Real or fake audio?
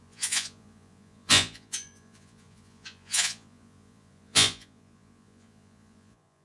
fake